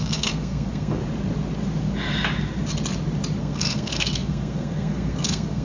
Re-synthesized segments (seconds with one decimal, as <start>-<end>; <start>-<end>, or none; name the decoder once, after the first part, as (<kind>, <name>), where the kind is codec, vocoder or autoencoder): 0.0-1.0 (codec, SNAC); 3.4-5.6